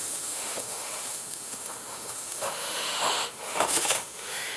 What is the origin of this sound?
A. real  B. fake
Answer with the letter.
B